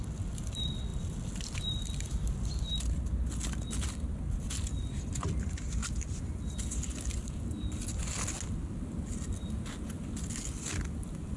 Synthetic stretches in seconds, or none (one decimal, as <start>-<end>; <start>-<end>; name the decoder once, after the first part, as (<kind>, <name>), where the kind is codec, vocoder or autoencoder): none